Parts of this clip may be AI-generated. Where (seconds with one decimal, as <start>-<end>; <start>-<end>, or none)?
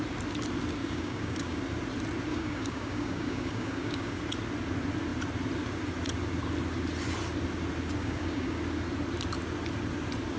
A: 0.8-1.6; 2.3-4.2; 8.0-8.6